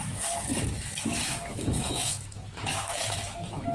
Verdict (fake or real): fake